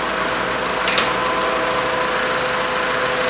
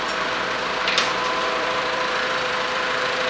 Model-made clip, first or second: second